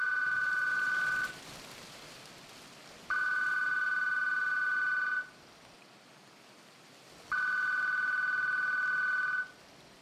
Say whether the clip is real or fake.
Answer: real